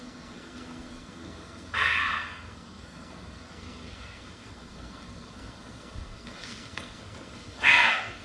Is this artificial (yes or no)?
yes